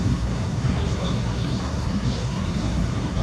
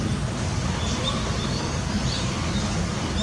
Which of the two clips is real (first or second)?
second